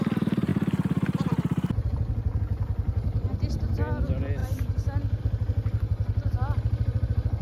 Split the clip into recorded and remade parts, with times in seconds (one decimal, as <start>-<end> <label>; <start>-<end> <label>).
0.0-7.4 recorded